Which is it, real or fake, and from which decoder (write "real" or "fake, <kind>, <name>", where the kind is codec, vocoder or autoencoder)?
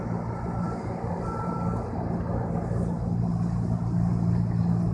real